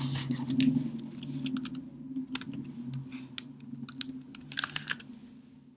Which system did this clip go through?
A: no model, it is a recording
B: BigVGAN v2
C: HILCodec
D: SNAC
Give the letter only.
A